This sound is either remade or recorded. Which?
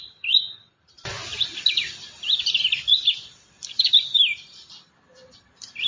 remade